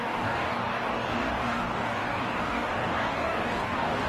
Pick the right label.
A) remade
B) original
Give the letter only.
A